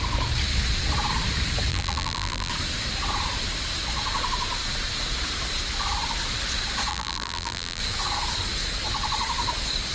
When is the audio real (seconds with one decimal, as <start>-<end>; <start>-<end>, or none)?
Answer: 0.0-1.7; 2.5-6.9; 7.8-9.9